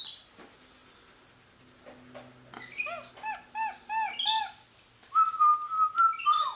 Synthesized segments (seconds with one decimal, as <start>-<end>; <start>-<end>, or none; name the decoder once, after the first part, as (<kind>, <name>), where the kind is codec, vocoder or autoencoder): none